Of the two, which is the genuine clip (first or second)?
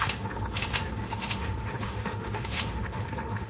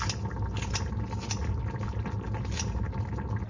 second